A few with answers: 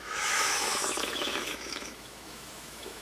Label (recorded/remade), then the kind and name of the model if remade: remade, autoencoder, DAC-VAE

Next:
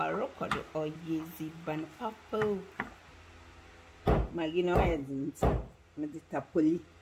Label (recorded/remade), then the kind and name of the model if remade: recorded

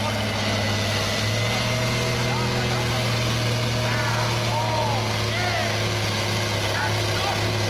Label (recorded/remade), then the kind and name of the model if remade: recorded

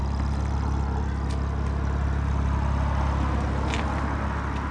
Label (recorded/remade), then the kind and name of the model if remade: recorded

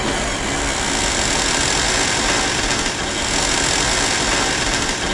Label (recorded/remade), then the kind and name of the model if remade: recorded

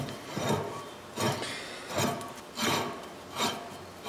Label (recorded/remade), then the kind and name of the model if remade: recorded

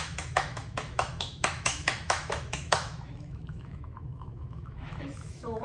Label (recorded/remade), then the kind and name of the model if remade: remade, autoencoder, DAC-VAE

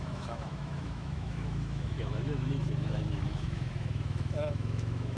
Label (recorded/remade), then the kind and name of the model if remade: remade, autoencoder, DAC-VAE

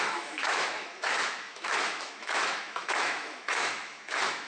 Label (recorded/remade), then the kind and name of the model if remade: remade, autoencoder, DAC-VAE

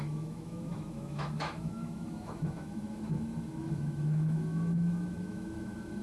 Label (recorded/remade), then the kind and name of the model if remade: remade, autoencoder, DAC-VAE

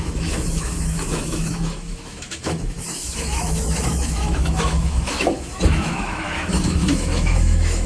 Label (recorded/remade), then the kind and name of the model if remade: remade, autoencoder, DAC-VAE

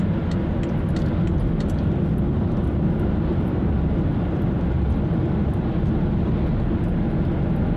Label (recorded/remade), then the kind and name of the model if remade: recorded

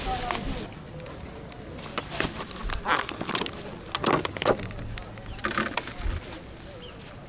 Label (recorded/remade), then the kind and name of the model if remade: recorded